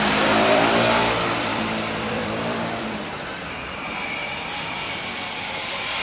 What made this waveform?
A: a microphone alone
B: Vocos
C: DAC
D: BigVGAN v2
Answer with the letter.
D